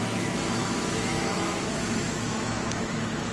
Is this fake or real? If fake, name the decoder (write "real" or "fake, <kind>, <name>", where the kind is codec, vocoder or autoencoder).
fake, autoencoder, DAC-VAE